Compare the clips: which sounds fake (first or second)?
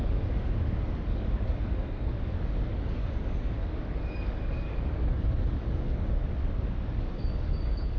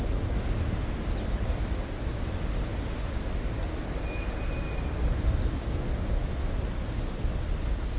first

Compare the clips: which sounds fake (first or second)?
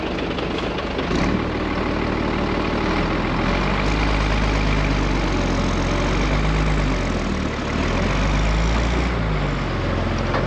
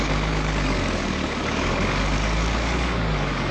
second